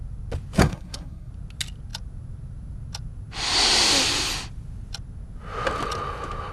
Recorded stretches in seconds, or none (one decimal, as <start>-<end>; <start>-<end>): 0.0-0.6; 1.3-6.5